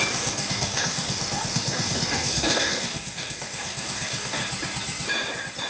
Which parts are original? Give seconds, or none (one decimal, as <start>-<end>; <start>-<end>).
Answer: 4.4-5.7